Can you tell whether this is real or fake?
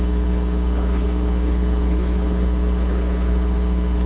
fake